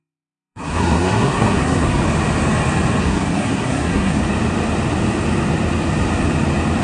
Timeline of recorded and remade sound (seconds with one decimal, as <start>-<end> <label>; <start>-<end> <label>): 0.0-2.0 remade; 2.0-3.0 recorded; 3.0-4.2 remade; 4.2-6.8 recorded